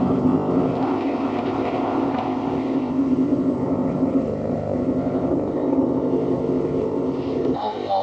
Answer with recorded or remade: remade